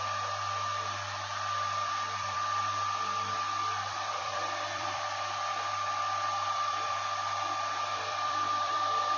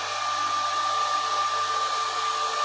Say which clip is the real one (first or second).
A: second